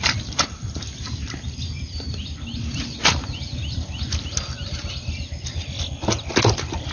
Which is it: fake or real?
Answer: real